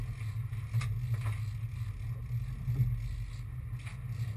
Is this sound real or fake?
real